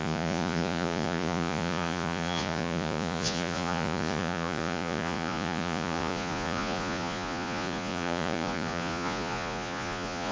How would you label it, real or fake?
fake